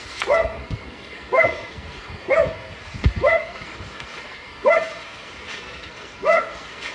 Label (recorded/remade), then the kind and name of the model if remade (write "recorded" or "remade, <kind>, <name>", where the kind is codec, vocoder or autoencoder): remade, codec, SNAC